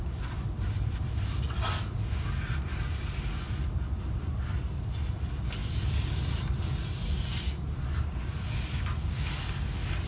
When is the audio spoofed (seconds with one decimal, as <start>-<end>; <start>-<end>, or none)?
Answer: none